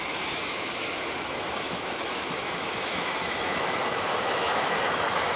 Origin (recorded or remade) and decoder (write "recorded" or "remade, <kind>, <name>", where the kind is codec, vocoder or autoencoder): remade, autoencoder, DAC-VAE